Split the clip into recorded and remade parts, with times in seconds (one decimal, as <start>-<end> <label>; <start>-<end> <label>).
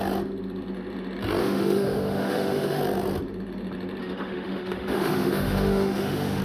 0.0-1.4 recorded; 1.4-2.8 remade; 2.8-4.0 recorded; 4.0-6.4 remade